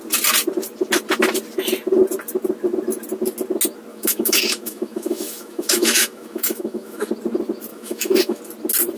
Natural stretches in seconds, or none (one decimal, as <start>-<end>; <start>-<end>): 0.0-3.9; 7.1-7.7; 8.4-9.0